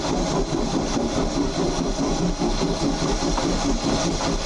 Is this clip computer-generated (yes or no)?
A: no